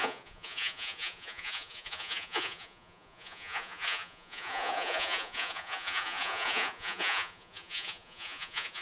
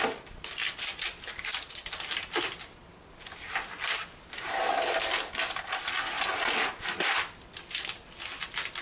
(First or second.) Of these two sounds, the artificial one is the first